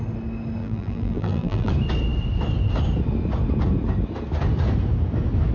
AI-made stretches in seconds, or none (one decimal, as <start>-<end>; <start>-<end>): 0.6-1.7